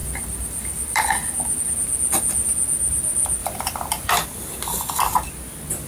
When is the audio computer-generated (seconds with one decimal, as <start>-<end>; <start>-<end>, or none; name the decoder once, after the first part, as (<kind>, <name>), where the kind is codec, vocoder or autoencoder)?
0.0-1.6 (vocoder, BigVGAN v2); 3.4-4.1

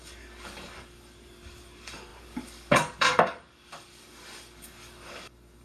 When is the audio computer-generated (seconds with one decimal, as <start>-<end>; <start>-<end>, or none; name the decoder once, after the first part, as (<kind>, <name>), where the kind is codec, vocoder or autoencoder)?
0.0-5.6 (codec, DAC)